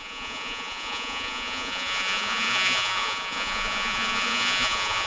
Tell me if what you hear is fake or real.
fake